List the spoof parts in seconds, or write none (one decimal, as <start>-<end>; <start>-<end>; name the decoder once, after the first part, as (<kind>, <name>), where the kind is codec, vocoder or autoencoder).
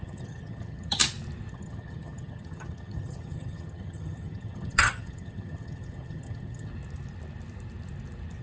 0.0-1.0 (vocoder, HiFi-GAN); 1.5-6.7